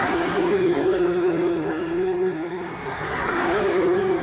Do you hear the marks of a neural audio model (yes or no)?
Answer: yes